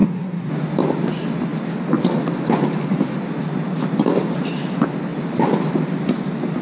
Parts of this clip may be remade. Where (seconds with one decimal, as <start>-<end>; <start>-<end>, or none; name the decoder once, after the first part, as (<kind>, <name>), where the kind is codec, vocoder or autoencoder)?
0.0-0.5 (codec, SNAC)